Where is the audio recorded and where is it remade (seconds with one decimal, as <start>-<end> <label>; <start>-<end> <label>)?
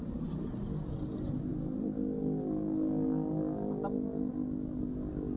0.0-5.4 recorded